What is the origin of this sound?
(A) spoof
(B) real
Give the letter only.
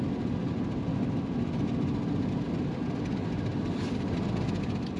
B